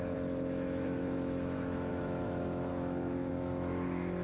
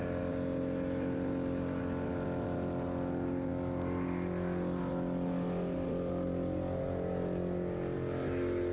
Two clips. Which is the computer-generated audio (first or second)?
first